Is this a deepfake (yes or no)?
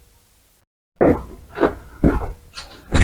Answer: no